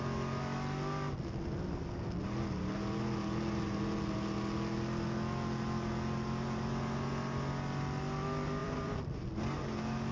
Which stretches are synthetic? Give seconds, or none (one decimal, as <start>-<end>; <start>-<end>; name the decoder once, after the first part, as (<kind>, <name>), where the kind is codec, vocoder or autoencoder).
8.6-9.3 (vocoder, BigVGAN v2)